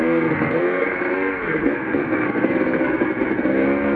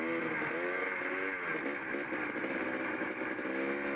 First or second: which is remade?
first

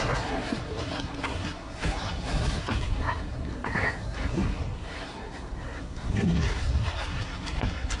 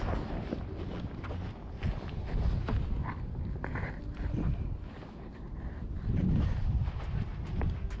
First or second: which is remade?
first